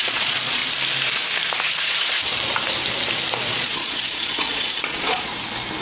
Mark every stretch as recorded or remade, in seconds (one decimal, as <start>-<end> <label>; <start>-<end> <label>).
0.0-0.6 remade; 0.6-1.7 recorded; 1.7-2.3 remade; 2.3-3.5 recorded; 3.5-5.3 remade; 5.3-5.8 recorded